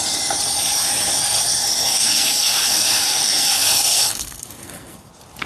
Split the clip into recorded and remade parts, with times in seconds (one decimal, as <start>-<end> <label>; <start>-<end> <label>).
0.0-1.8 recorded; 1.8-5.1 remade; 5.1-5.5 recorded